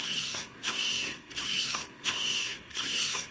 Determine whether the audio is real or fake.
fake